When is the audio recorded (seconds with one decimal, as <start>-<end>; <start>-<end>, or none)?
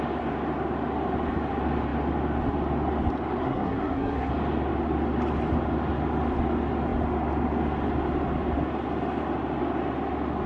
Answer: 0.0-3.4; 4.3-10.5